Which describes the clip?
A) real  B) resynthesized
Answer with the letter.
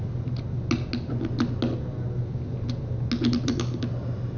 A